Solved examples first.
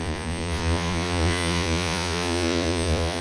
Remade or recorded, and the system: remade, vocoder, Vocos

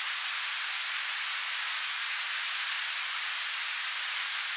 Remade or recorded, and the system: recorded